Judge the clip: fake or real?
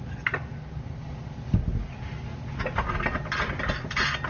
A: real